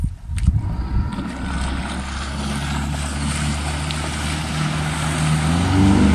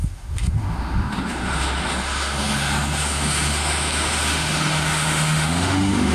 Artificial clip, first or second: second